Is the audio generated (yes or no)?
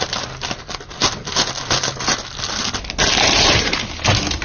no